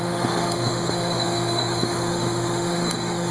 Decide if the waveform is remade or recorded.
remade